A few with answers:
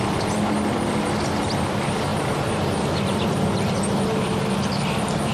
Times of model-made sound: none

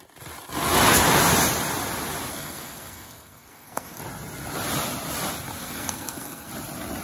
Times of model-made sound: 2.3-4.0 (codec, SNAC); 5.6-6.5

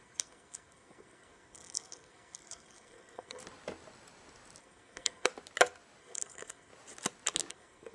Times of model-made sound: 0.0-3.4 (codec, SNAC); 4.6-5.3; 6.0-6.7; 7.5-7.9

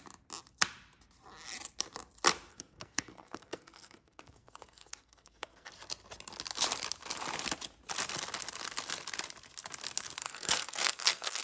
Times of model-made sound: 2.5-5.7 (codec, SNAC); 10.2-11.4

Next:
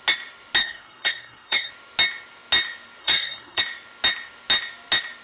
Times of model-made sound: 0.6-1.7 (codec, SNAC); 3.0-3.6

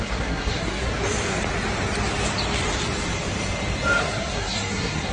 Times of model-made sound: 0.0-0.9 (codec, SNAC); 4.0-5.1